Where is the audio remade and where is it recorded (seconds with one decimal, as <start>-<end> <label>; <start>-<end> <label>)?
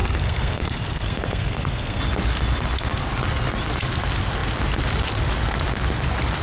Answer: 0.0-2.0 remade; 2.0-6.4 recorded